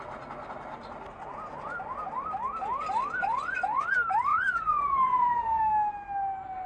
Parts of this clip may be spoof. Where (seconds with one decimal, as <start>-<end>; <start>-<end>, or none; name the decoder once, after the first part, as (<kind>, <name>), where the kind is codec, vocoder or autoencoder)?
3.2-3.8 (vocoder, Vocos); 4.3-5.6